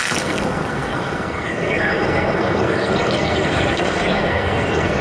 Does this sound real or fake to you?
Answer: fake